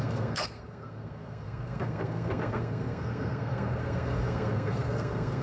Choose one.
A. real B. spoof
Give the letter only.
B